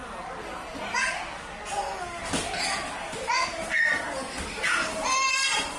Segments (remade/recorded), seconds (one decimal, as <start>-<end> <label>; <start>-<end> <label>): 0.0-5.8 recorded